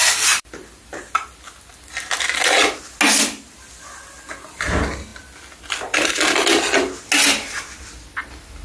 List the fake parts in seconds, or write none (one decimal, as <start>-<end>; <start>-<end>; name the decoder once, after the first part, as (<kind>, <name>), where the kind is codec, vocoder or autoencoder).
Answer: none